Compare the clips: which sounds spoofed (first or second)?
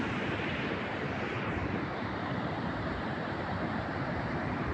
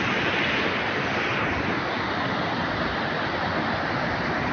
first